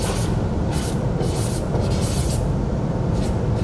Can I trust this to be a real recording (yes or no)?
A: yes